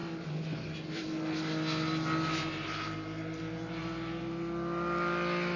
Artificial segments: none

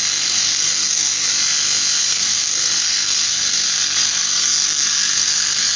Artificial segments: 0.0-1.3 (codec, SNAC); 2.0-5.8

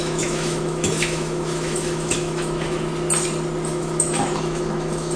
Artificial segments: 0.0-2.9 (autoencoder, DAC-VAE); 3.7-5.2

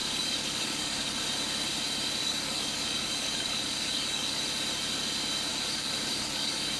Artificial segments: 0.0-1.2 (codec, DAC); 2.2-4.4; 5.5-6.8

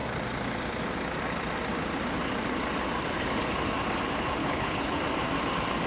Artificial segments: 4.4-5.0 (codec, HILCodec)